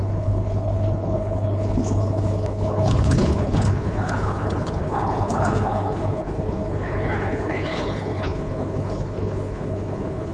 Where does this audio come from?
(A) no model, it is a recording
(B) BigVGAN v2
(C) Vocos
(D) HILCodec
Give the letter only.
D